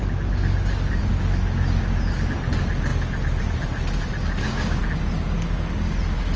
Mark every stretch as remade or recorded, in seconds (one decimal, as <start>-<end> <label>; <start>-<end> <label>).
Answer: 0.0-4.2 recorded; 4.2-4.8 remade; 4.8-6.4 recorded